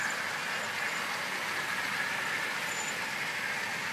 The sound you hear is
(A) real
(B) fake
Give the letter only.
A